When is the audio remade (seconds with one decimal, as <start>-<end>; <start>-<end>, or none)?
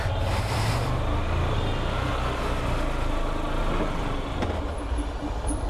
none